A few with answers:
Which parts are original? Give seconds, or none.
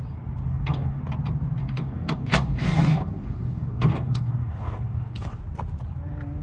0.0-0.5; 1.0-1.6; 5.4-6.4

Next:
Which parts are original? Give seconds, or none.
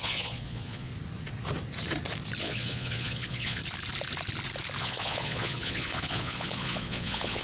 0.9-2.4; 3.6-4.8